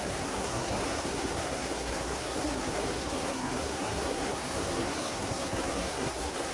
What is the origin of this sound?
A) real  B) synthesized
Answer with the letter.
B